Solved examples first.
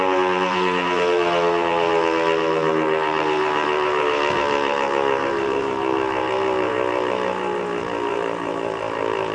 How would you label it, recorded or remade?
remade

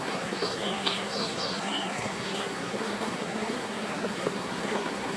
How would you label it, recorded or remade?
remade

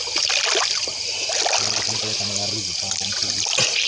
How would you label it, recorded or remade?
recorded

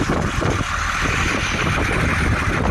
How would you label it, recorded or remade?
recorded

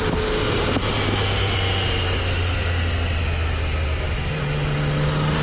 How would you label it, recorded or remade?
recorded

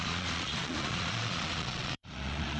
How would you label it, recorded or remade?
remade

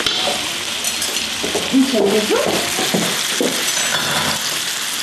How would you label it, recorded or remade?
recorded